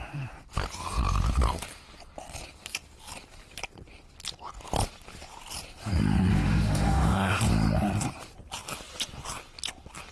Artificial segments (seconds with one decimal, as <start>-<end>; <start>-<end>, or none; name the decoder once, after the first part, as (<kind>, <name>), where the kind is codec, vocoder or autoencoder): 6.3-7.4 (autoencoder, DAC-VAE)